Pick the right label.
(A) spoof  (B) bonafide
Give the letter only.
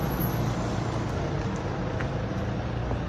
B